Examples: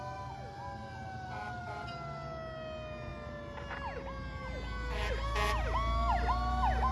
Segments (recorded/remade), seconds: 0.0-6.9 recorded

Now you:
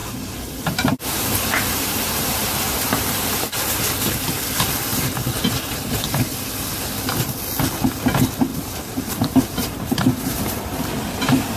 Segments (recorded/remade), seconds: 0.0-3.8 remade; 3.8-4.9 recorded; 4.9-6.2 remade; 6.2-8.5 recorded; 8.5-10.4 remade; 10.4-11.6 recorded

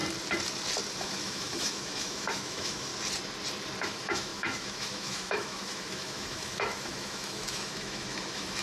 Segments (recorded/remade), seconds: 0.0-1.0 recorded; 1.0-2.9 remade; 2.9-3.8 recorded; 3.8-8.6 remade

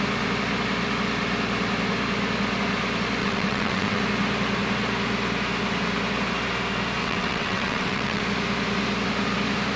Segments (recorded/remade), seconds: 0.0-3.2 recorded; 3.2-4.0 remade; 4.0-7.0 recorded; 7.0-8.2 remade; 8.2-9.8 recorded